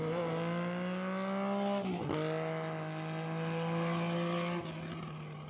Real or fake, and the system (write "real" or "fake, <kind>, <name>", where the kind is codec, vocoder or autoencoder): real